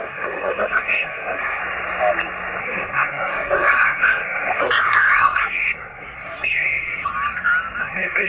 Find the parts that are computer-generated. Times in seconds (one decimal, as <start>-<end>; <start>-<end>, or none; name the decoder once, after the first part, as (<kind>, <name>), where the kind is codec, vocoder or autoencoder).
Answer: 0.0-1.6 (codec, SNAC); 2.6-7.1; 7.8-8.3